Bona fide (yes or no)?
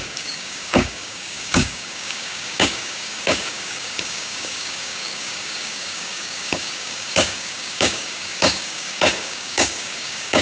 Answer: no